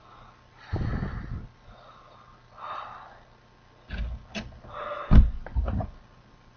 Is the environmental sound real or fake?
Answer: real